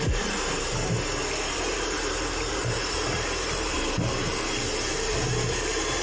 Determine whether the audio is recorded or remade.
remade